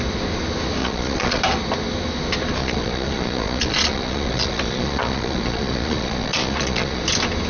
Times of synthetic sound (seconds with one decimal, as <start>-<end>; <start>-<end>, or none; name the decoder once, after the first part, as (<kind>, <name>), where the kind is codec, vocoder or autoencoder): 0.8-1.4 (vocoder, Vocos); 2.6-7.0